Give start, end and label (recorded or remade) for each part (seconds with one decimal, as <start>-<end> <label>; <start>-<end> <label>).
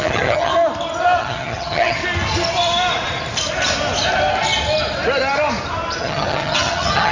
0.0-0.5 remade; 0.5-1.2 recorded; 1.2-2.0 remade; 2.0-6.0 recorded; 6.0-7.1 remade